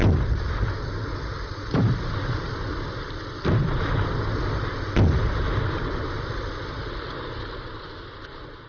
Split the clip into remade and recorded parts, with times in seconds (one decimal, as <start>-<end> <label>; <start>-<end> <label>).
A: 0.0-2.0 remade; 2.0-8.7 recorded